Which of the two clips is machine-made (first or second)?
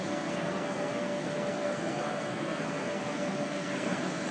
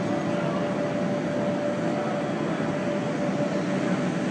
first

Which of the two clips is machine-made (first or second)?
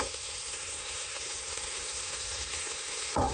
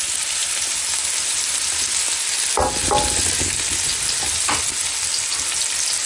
first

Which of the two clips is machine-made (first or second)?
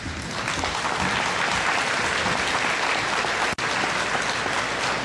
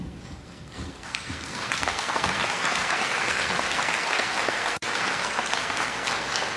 second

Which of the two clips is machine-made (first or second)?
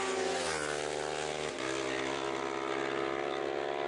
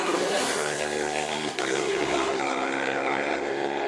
second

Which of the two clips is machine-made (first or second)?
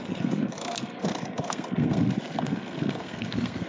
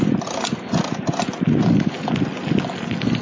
first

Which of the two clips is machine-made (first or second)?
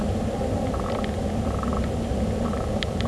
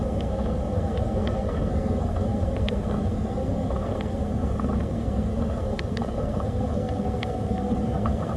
second